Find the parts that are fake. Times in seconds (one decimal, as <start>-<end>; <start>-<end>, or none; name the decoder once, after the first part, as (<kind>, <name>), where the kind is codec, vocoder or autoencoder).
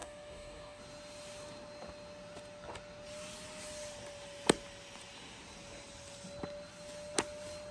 0.0-0.8 (codec, DAC)